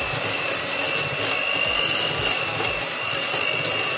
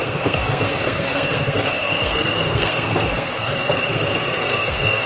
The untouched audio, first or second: first